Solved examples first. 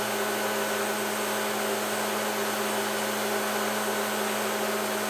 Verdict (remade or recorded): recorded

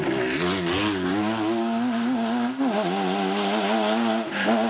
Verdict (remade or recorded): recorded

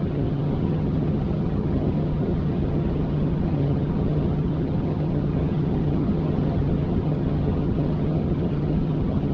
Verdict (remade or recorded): remade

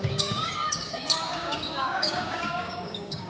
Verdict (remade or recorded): remade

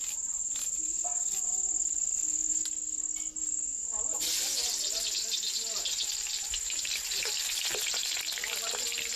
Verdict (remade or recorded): recorded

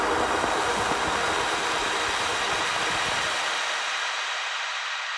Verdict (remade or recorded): recorded